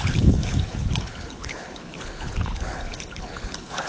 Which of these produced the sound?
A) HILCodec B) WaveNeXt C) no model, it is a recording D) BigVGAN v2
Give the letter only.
A